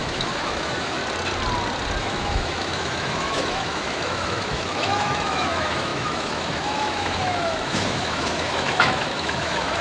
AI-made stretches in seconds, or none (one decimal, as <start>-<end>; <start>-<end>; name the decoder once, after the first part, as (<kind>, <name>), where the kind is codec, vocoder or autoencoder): 0.0-1.0 (autoencoder, DAC-VAE); 2.0-9.8